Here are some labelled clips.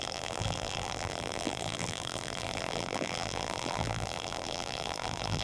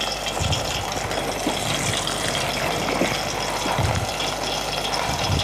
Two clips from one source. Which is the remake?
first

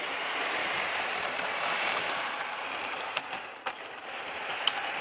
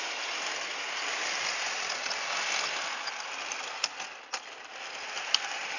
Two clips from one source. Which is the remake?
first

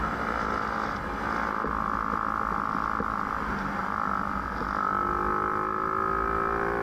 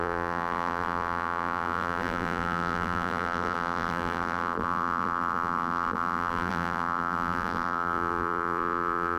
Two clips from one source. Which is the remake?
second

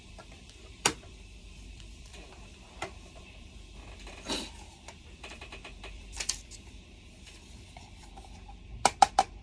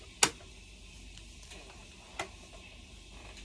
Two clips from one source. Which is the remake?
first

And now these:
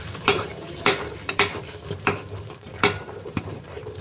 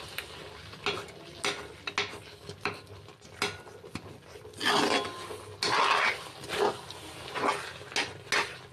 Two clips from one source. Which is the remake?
first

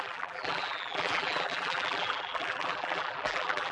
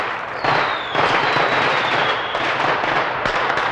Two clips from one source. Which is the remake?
first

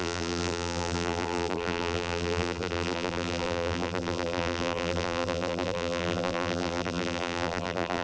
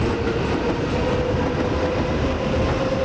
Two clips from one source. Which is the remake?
first